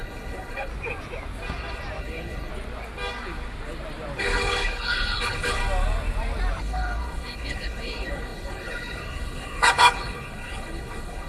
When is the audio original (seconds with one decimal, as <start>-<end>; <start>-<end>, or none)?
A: 0.7-2.0; 2.5-4.2; 5.6-6.6